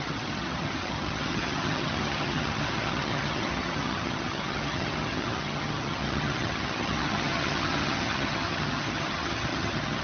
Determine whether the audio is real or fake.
fake